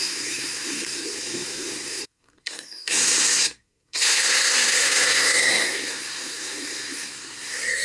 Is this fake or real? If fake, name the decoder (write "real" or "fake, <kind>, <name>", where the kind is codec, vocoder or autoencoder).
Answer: fake, codec, SNAC